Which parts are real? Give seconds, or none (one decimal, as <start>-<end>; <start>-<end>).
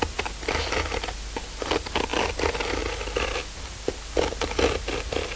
0.0-5.4